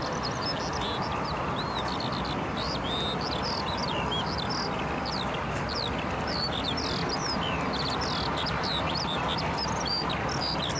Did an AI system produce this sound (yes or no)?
no